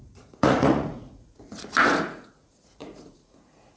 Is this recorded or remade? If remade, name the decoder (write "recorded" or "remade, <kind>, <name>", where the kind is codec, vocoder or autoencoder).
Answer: remade, vocoder, Vocos